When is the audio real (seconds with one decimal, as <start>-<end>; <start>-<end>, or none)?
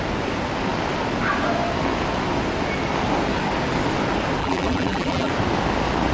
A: 0.0-4.4; 5.3-6.1